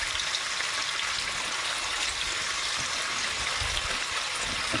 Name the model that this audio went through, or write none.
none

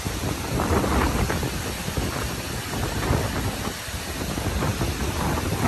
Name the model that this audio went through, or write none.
none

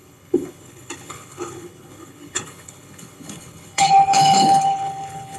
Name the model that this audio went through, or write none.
codec, HILCodec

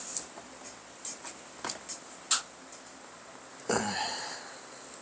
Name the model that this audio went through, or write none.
none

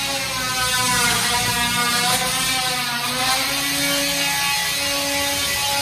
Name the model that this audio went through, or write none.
none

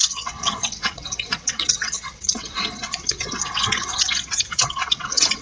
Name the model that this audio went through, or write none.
vocoder, WaveNeXt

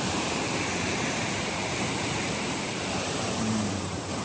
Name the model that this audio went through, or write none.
vocoder, BigVGAN v2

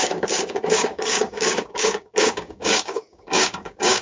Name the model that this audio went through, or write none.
codec, DAC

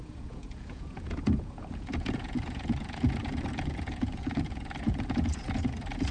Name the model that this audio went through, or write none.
vocoder, Vocos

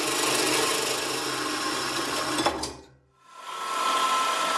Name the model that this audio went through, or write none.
none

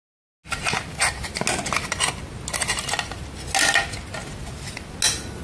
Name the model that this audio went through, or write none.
none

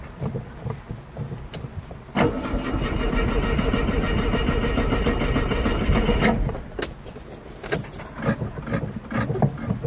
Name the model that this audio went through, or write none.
none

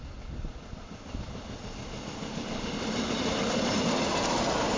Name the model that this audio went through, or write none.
none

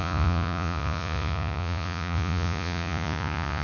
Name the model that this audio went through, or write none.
vocoder, Vocos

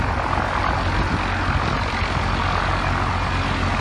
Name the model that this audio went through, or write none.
none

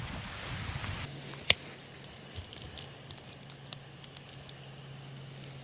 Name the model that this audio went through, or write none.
none